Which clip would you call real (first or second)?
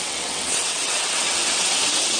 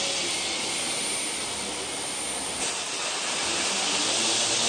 second